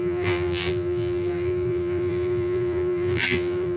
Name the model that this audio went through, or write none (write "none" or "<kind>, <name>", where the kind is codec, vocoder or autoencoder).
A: vocoder, BigVGAN v2